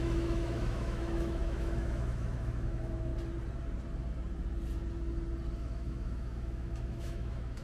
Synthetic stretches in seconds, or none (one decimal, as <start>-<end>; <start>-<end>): 0.0-3.1; 5.6-7.6